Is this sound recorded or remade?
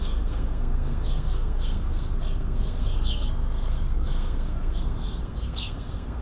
remade